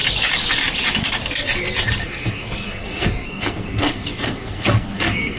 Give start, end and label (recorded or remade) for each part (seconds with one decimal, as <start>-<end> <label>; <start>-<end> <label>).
0.0-2.0 recorded; 2.0-5.4 remade